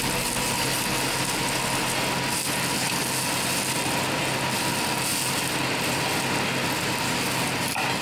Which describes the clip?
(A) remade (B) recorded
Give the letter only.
B